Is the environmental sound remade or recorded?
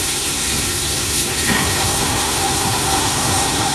remade